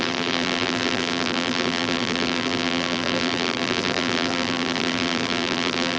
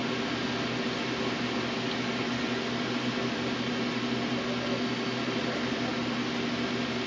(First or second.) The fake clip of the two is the first